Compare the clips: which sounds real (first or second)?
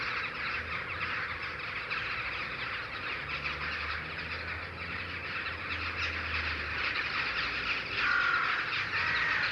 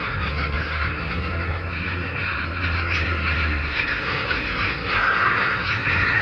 first